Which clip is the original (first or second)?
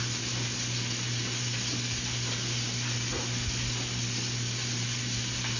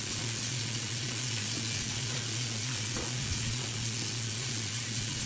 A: first